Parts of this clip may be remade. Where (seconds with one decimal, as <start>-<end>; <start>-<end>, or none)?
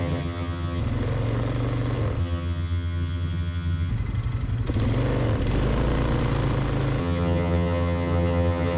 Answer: 0.0-0.8; 2.2-3.9; 7.0-8.8